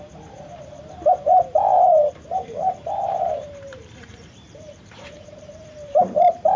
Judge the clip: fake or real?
fake